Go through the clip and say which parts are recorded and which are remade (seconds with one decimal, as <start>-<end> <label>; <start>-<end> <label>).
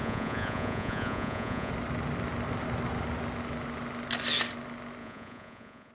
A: 0.0-1.7 remade; 1.7-5.0 recorded; 5.0-5.9 remade